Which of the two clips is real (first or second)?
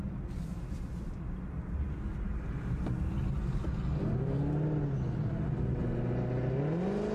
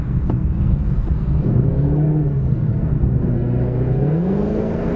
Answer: first